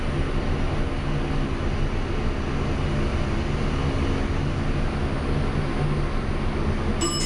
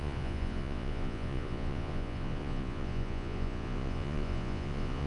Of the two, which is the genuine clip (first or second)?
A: first